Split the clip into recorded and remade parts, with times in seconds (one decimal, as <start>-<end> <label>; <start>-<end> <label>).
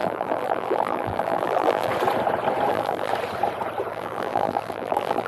0.0-1.9 remade; 1.9-2.7 recorded; 2.7-3.1 remade; 3.1-3.9 recorded; 3.9-5.3 remade